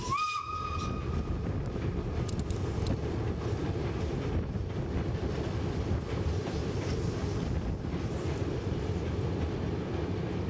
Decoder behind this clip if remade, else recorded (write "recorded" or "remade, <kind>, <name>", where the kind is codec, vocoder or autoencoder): recorded